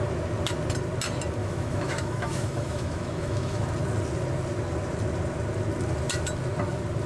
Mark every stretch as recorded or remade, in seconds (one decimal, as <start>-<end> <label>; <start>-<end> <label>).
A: 0.0-1.4 recorded; 1.4-3.7 remade; 3.7-7.1 recorded